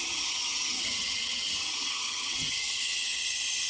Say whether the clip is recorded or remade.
remade